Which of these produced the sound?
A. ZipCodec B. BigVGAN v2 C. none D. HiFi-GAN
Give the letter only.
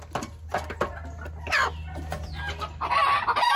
C